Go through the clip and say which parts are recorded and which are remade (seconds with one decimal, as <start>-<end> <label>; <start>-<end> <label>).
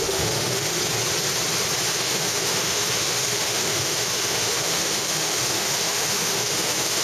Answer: 0.0-0.8 remade; 0.8-1.9 recorded; 1.9-7.0 remade